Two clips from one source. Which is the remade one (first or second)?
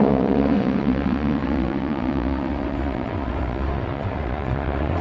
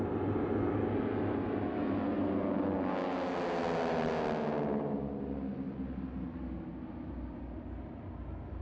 first